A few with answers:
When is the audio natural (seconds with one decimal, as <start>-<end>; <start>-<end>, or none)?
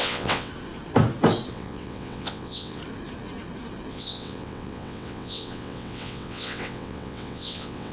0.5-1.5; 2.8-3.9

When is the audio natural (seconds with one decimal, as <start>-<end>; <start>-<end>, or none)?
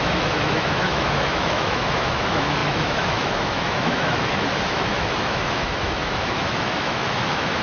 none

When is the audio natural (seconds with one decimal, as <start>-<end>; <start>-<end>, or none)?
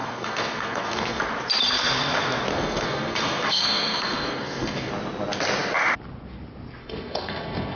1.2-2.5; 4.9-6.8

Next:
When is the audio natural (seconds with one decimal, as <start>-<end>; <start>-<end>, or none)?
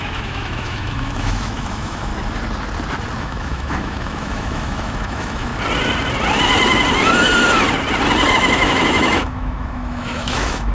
2.1-3.2; 5.5-8.3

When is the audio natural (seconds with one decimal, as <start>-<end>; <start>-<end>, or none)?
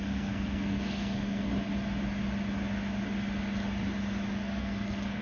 1.5-4.6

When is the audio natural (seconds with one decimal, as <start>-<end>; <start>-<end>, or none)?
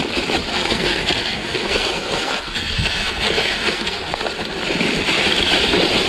0.0-0.5; 4.2-6.1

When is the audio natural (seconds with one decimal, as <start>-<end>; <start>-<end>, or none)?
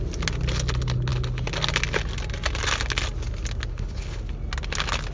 0.0-3.7; 4.2-5.1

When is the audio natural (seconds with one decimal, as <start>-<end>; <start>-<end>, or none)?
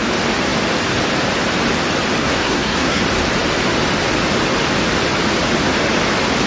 0.0-2.2; 3.0-6.5